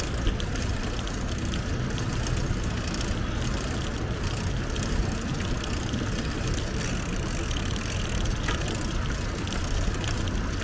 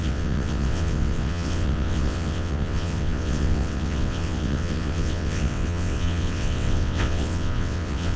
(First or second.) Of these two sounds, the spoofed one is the second